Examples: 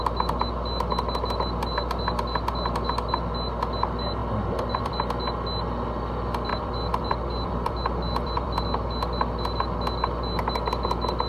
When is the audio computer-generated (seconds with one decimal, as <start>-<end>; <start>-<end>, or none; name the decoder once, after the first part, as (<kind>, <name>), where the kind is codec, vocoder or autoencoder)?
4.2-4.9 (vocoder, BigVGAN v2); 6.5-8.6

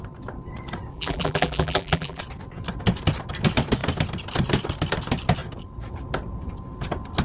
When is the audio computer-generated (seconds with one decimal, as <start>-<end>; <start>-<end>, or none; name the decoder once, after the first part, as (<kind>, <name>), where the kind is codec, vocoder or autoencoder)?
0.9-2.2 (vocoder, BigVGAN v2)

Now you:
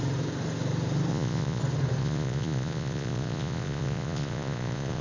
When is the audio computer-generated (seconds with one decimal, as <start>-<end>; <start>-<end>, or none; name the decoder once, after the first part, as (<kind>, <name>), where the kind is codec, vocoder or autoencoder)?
1.1-1.6 (vocoder, Vocos); 2.0-5.0

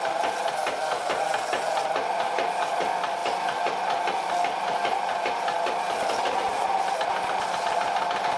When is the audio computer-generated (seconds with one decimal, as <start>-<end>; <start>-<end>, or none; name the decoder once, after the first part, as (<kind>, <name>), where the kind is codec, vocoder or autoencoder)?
none

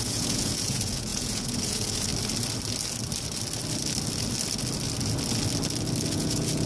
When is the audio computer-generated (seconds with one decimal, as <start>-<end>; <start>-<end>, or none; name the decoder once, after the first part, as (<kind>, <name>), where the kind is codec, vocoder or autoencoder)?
0.0-2.1 (vocoder, Vocos); 6.1-6.7